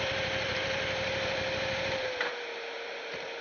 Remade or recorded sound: remade